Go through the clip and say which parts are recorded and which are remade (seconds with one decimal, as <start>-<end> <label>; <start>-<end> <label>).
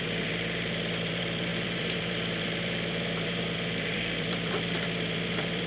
0.0-5.7 remade